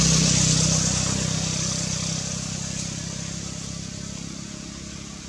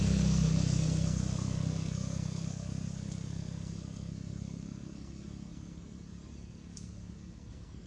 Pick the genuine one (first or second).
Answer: first